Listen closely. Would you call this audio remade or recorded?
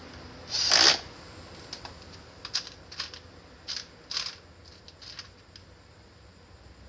recorded